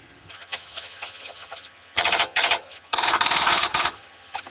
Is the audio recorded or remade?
remade